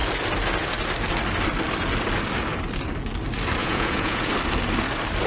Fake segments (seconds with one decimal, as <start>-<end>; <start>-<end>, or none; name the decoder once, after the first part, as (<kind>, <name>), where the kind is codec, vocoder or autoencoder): 3.6-4.3 (vocoder, Vocos)